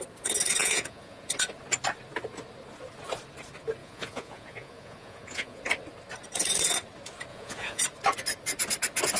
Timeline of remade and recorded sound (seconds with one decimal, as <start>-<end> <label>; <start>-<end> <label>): 0.0-0.6 recorded; 0.6-1.3 remade; 1.3-3.8 recorded; 3.8-5.6 remade; 5.6-7.3 recorded; 7.3-7.8 remade; 7.8-9.2 recorded